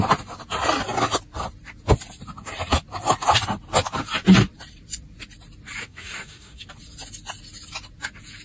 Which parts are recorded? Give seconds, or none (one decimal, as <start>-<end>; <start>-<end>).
0.0-5.8; 6.7-8.4